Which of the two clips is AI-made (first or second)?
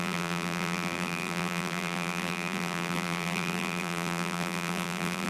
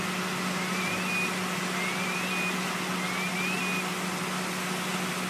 first